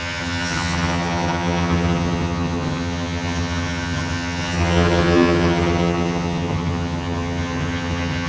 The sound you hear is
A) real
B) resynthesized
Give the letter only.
B